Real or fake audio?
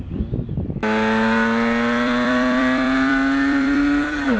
fake